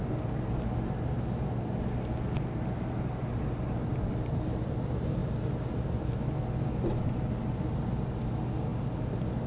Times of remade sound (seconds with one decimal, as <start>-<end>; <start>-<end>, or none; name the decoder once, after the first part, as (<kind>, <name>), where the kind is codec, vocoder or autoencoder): none